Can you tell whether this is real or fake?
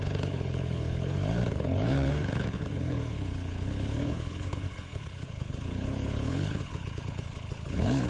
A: fake